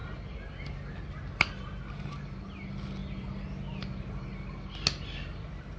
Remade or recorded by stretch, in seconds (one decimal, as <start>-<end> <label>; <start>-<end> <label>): 0.0-5.8 recorded